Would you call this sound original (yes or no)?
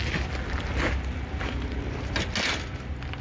yes